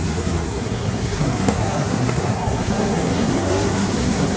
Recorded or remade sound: remade